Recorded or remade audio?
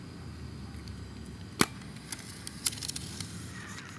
recorded